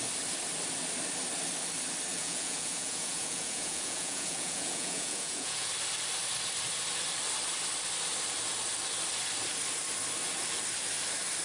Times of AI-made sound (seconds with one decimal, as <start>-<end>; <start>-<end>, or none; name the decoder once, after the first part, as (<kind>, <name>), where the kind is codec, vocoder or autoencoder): 2.1-5.7 (vocoder, Vocos)